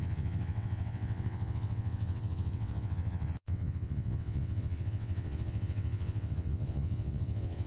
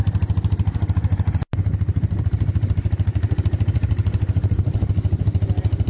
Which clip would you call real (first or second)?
second